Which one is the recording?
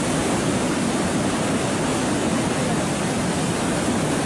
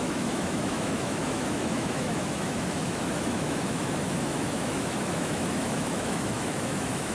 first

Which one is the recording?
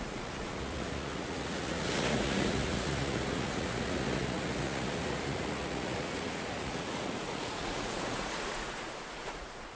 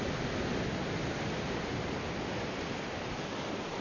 second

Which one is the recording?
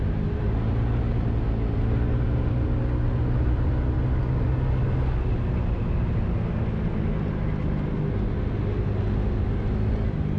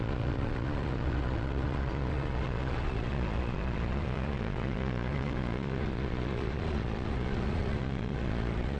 first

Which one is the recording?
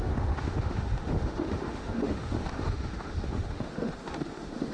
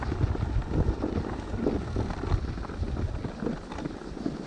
second